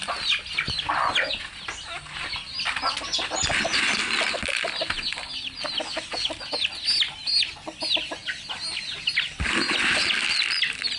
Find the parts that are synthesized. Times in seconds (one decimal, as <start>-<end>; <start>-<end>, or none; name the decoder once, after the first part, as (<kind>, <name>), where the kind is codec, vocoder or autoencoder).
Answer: none